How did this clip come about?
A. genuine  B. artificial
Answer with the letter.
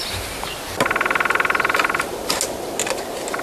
A